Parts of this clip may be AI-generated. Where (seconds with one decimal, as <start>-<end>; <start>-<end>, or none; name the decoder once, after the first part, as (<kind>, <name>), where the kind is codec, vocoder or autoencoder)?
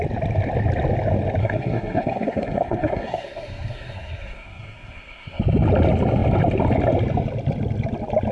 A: 1.4-5.4 (codec, SNAC)